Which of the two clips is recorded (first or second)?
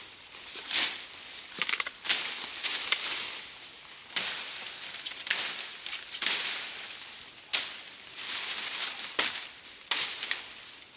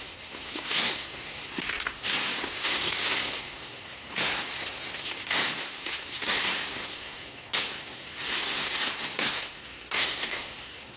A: first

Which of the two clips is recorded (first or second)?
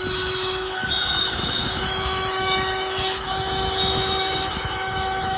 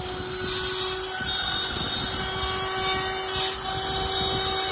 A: second